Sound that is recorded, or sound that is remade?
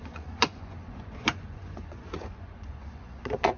remade